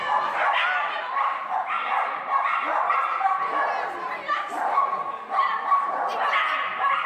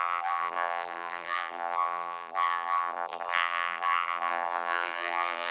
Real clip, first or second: first